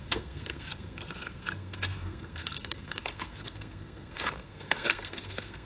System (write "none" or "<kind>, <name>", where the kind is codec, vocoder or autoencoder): codec, SNAC